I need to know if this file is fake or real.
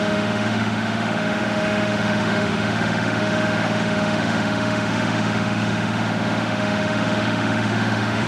fake